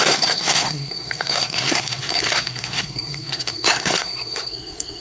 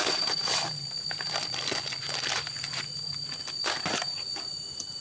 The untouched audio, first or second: second